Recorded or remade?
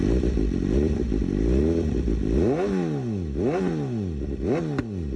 recorded